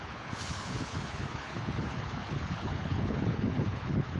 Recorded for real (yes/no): no